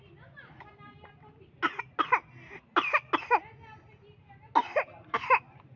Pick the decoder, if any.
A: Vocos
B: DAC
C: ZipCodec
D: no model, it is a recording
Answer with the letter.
D